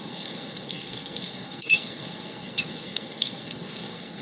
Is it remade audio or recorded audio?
remade